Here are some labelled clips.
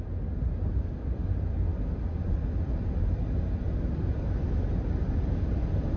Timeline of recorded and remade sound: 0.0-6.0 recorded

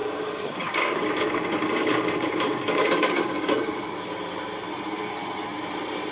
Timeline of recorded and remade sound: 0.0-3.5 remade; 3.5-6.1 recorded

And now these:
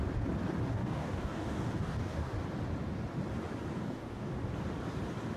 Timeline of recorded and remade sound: 0.0-0.7 recorded; 0.7-2.3 remade; 2.3-3.7 recorded; 3.7-4.3 remade; 4.3-5.4 recorded

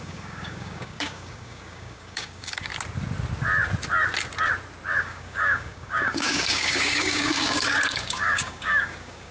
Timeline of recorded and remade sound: 0.0-2.7 remade; 2.7-5.0 recorded; 5.0-9.3 remade

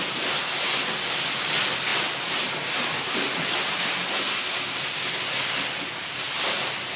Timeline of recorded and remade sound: 0.0-7.0 recorded